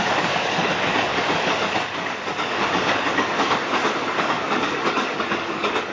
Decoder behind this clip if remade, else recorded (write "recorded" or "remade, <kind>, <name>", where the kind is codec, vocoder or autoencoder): remade, codec, DAC